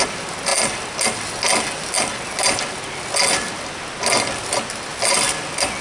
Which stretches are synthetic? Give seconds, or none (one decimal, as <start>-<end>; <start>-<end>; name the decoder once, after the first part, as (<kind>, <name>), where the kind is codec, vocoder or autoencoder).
none